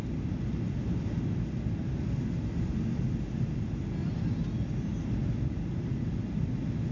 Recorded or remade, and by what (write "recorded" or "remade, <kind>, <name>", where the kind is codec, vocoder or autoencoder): recorded